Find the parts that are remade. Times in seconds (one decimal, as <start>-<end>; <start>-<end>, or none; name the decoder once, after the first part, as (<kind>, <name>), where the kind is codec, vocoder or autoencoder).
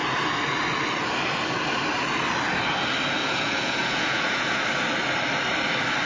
3.2-4.6 (vocoder, Vocos)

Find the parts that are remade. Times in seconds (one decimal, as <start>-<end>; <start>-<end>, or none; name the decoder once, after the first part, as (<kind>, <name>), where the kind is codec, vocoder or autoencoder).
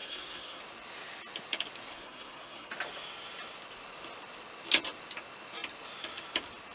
0.0-0.6 (codec, SNAC); 1.9-2.7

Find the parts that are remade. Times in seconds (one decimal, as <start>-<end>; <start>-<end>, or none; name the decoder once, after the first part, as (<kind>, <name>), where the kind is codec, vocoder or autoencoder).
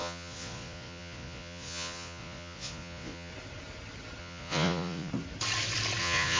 0.0-3.3 (vocoder, Vocos); 4.2-5.1; 6.0-6.4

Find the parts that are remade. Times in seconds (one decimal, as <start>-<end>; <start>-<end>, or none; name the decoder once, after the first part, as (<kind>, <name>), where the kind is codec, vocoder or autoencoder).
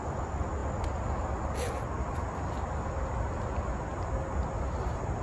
none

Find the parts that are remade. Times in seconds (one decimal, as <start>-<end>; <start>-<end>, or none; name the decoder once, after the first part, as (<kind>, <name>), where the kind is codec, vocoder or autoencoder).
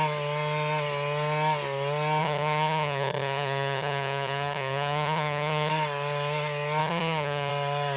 2.2-5.7 (vocoder, HiFi-GAN); 6.8-7.5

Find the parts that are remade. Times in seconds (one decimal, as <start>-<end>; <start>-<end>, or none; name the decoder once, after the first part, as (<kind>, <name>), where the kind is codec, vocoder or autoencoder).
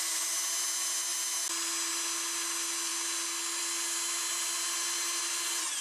none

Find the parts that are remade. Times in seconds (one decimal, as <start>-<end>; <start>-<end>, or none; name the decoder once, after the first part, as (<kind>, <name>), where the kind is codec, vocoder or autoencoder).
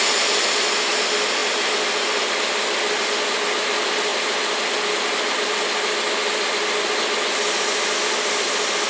none